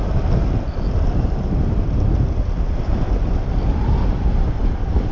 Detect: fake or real real